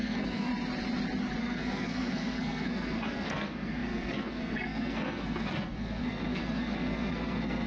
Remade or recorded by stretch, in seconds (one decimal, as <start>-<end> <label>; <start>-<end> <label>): 0.0-0.5 remade; 0.5-1.4 recorded; 1.4-7.7 remade

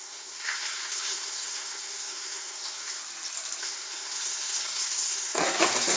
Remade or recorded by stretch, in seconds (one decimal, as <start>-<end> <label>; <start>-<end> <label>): 0.0-3.0 remade; 3.0-3.6 recorded; 3.6-6.0 remade

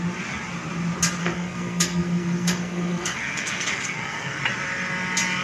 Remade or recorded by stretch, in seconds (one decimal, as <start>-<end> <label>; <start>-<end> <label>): 0.0-1.2 recorded; 1.2-4.4 remade; 4.4-5.4 recorded

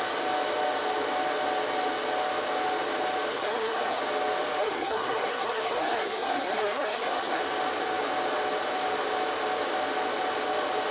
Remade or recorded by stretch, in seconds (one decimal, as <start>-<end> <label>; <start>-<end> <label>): 0.0-3.3 recorded; 3.3-4.0 remade; 4.0-4.6 recorded; 4.6-7.4 remade; 7.4-10.9 recorded

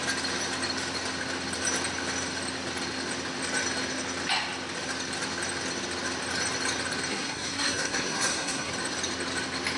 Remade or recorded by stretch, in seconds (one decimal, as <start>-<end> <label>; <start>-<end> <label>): 0.0-7.1 recorded; 7.1-8.7 remade; 8.7-9.8 recorded